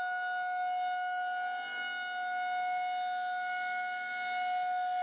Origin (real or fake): real